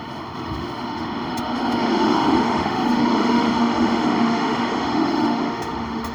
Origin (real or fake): fake